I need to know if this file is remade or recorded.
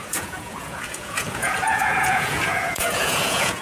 remade